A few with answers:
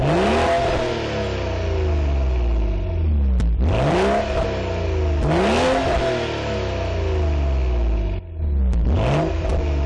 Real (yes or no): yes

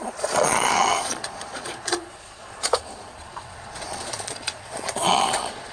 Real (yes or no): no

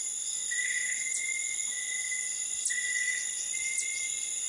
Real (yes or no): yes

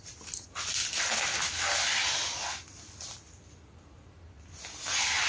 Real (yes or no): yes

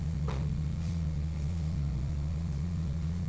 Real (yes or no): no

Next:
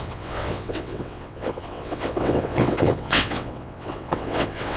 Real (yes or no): no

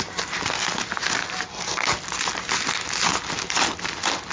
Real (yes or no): yes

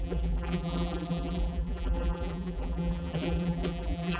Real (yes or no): no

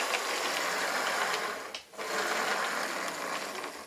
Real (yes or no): yes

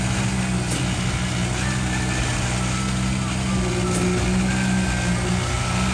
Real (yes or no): yes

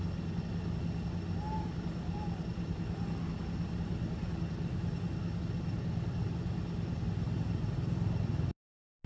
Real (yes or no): yes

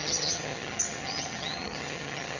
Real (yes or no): no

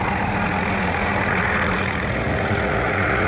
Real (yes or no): no